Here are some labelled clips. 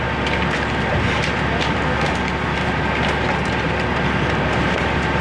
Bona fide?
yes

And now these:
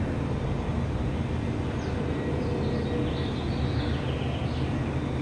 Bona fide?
yes